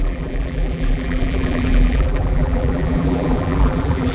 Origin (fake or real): fake